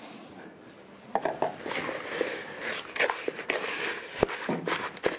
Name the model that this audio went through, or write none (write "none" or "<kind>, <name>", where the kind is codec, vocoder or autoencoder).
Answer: none